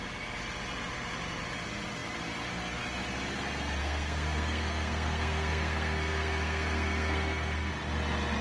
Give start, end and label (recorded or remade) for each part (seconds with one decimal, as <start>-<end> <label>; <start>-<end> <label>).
0.0-3.8 recorded; 3.8-7.7 remade; 7.7-8.4 recorded

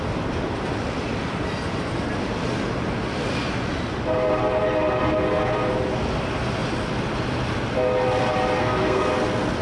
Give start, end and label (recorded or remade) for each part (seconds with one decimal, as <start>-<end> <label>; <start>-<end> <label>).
0.0-8.6 recorded; 8.6-9.1 remade; 9.1-9.6 recorded